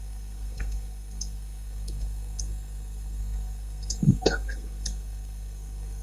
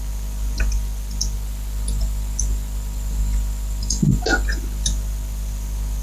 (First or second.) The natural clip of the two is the second